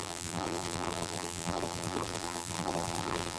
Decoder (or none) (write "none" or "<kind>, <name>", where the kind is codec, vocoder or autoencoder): vocoder, BigVGAN v2